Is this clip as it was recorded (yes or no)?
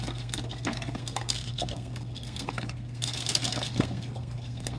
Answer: no